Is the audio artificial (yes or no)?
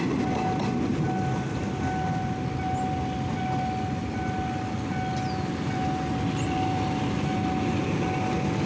no